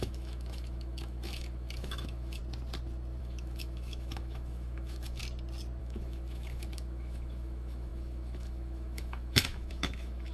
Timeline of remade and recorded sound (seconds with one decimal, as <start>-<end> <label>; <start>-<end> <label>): 0.0-2.4 remade; 2.4-3.2 recorded; 3.2-5.2 remade; 5.2-5.8 recorded; 5.8-10.3 remade